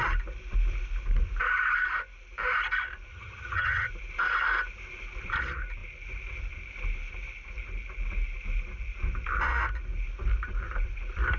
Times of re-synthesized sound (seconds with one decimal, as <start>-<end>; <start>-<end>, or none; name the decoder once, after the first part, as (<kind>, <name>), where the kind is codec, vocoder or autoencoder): 3.1-3.9 (vocoder, HiFi-GAN)